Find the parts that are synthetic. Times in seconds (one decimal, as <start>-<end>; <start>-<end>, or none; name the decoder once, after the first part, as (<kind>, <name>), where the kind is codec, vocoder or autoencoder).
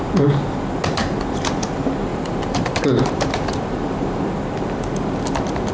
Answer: 2.1-4.2 (vocoder, BigVGAN v2)